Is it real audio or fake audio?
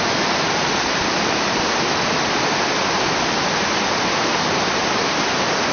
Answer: real